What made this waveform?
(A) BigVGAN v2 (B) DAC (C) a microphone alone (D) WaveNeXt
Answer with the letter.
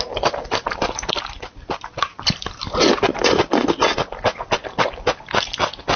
C